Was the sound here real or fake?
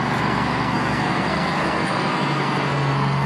fake